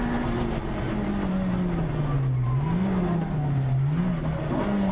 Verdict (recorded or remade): recorded